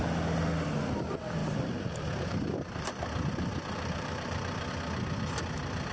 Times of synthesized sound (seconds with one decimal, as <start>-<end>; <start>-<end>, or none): 1.4-4.7